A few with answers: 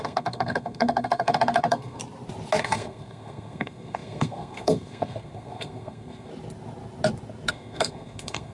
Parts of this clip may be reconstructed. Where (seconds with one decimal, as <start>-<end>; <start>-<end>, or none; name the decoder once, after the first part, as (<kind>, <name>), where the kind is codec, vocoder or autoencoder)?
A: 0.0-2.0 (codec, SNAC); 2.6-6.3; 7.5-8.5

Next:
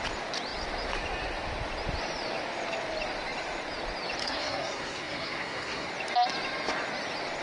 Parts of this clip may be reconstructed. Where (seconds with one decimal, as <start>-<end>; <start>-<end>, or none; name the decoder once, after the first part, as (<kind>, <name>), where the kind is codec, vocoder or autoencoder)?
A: 4.2-5.9 (codec, SNAC)

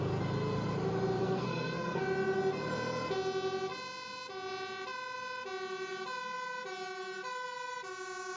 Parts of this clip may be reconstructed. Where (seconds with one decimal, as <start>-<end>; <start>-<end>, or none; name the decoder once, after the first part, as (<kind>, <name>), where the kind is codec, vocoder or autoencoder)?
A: 1.2-2.0 (codec, SNAC)

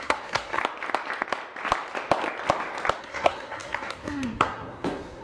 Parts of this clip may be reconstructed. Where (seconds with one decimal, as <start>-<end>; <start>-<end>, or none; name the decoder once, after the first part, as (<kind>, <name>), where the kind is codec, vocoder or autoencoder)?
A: 0.0-0.6 (codec, SNAC); 3.0-5.2

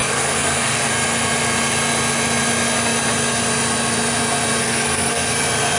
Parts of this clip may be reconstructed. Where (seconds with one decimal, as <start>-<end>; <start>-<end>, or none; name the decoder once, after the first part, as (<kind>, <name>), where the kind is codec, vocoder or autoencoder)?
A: 0.0-0.9 (codec, SNAC); 4.6-5.3

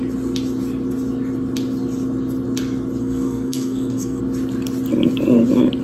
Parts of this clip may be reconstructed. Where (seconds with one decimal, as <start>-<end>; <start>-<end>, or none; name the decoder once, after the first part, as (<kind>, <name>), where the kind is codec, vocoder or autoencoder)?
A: 3.0-4.2 (codec, SNAC)